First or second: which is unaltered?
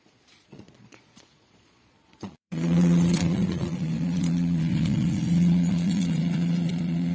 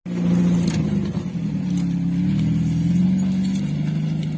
second